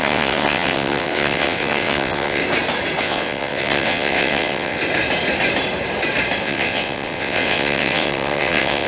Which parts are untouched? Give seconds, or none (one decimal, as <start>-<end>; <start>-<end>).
2.4-3.0; 4.8-6.4